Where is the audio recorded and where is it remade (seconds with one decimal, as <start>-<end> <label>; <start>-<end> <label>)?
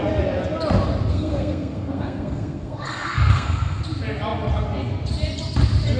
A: 0.0-1.1 recorded; 1.1-3.8 remade; 3.8-6.0 recorded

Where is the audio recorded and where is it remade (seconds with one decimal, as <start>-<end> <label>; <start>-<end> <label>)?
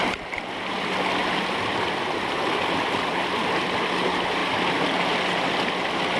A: 0.0-6.2 recorded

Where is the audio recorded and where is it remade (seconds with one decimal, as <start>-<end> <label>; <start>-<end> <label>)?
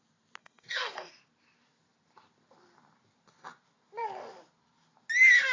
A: 0.0-0.4 recorded; 0.4-1.1 remade; 1.1-5.5 recorded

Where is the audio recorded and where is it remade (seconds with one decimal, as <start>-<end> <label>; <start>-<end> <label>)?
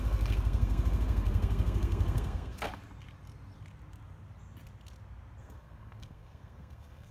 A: 0.0-2.7 remade; 2.7-5.4 recorded; 5.4-7.1 remade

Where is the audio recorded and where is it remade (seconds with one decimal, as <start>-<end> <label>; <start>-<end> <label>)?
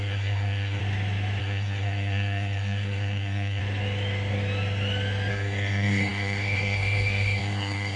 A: 0.0-0.8 remade; 0.8-1.4 recorded; 1.4-3.6 remade; 3.6-5.3 recorded; 5.3-8.0 remade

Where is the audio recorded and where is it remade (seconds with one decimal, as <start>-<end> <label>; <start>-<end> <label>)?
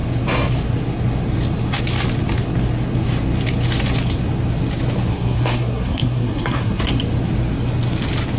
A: 0.0-5.1 recorded; 5.1-6.8 remade; 6.8-8.4 recorded